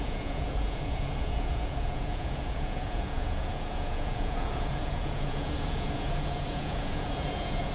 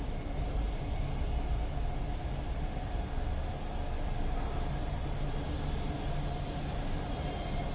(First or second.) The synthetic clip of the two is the first